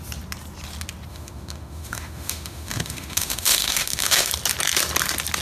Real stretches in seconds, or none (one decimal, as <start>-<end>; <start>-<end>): 0.0-1.1; 4.3-5.4